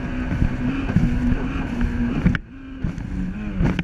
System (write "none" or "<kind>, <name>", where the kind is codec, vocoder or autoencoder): none